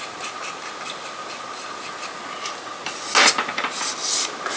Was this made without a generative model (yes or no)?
yes